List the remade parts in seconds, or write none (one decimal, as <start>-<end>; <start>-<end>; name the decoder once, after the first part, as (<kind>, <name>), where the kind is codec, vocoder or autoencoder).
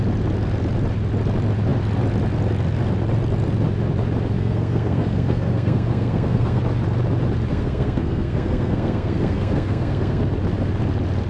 4.4-6.6 (codec, SNAC); 7.5-10.2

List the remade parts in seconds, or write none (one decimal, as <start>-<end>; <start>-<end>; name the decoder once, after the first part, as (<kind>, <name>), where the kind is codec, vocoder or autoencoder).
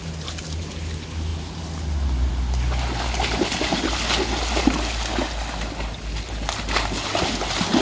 none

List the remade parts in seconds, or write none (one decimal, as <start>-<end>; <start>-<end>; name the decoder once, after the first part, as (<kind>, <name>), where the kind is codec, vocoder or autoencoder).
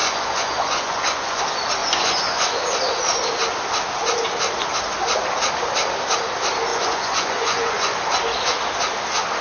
0.0-1.4 (vocoder, Vocos); 1.8-2.6; 6.7-8.0